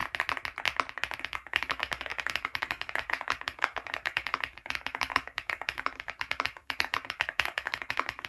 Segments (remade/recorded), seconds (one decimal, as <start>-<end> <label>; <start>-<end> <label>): 0.0-1.2 recorded; 1.2-8.3 remade